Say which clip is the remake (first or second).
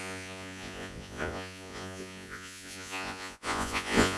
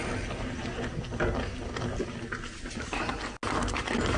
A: first